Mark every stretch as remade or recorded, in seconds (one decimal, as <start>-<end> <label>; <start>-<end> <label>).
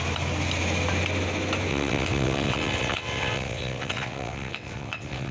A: 0.0-1.7 recorded; 1.7-5.3 remade